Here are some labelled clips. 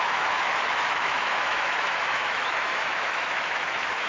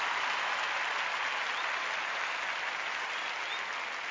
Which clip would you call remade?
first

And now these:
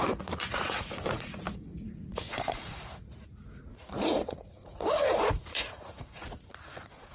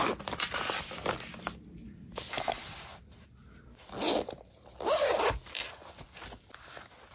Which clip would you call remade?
first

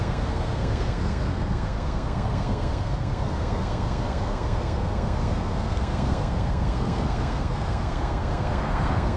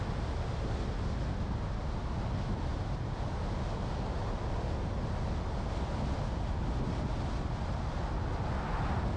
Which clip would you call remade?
first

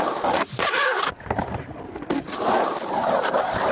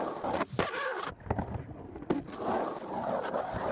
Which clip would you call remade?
first